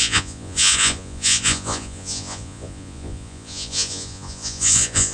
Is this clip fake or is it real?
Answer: fake